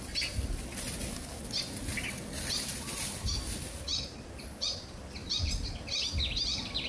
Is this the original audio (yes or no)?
yes